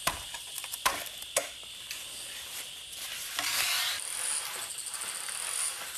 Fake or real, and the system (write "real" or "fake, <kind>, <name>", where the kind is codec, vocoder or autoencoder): real